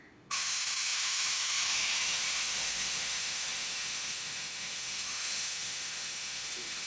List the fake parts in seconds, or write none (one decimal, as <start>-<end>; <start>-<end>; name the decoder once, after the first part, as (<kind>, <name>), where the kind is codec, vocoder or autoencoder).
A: 0.0-6.9 (autoencoder, DAC-VAE)